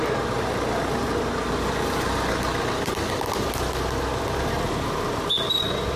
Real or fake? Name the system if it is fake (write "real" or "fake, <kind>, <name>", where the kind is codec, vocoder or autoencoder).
real